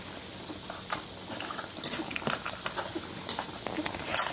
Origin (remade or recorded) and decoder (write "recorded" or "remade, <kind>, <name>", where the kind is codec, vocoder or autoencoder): recorded